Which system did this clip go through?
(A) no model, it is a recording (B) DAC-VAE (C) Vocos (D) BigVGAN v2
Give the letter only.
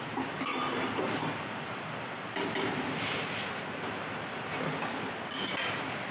A